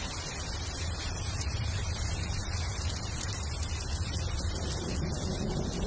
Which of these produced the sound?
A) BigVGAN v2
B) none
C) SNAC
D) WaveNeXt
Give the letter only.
A